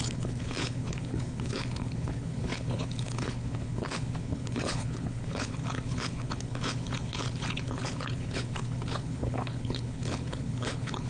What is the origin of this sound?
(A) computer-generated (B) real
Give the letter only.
A